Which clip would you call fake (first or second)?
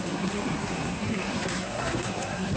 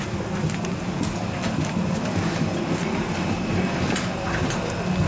first